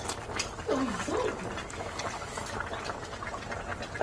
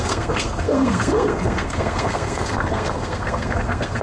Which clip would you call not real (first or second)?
second